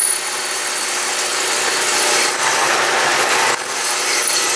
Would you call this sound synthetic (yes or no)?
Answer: yes